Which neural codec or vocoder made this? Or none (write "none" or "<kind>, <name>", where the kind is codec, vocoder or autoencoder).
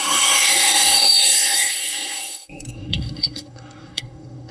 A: codec, SNAC